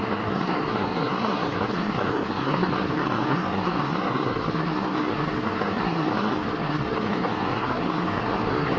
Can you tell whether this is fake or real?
fake